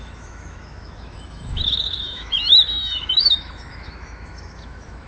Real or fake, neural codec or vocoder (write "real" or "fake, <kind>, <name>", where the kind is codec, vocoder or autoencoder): fake, autoencoder, DAC-VAE